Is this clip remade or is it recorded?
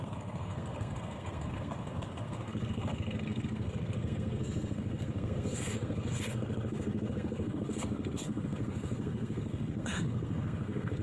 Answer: remade